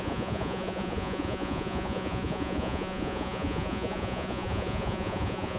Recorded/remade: remade